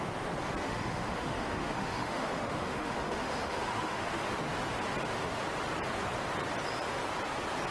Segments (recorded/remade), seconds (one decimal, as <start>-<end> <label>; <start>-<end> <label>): 0.0-0.6 recorded; 0.6-4.3 remade; 4.3-7.7 recorded